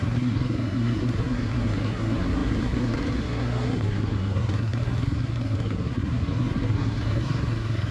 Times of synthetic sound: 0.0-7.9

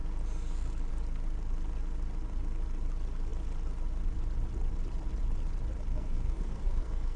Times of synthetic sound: 5.9-7.2

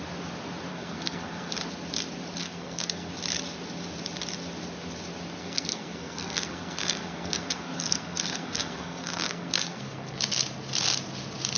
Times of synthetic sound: 0.7-1.5; 2.4-3.1; 5.4-10.2

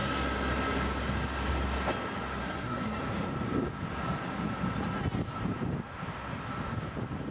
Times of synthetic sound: 2.4-3.0

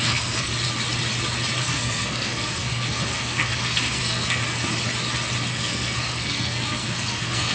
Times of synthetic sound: 0.0-0.5; 1.6-4.4; 5.5-7.5

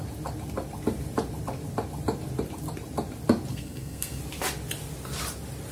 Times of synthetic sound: 3.5-4.2